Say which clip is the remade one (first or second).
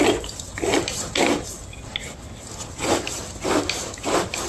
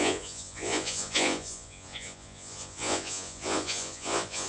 second